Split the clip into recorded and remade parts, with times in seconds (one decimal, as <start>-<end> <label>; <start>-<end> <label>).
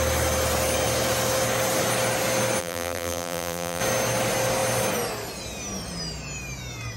0.0-2.6 recorded; 2.6-3.8 remade; 3.8-7.0 recorded